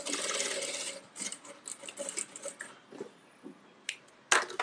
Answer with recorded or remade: recorded